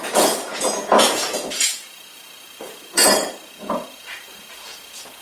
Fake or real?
fake